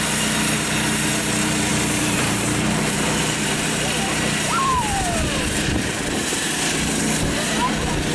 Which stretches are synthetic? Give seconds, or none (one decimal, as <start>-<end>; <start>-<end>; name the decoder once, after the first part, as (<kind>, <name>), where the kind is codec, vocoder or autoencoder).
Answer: 1.7-6.3 (vocoder, BigVGAN v2)